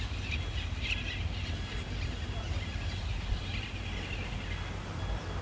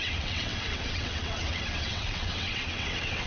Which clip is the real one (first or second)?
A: first